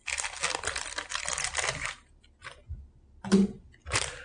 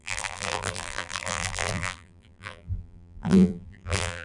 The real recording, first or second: first